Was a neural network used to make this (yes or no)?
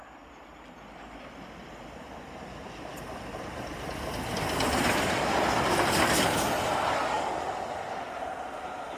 no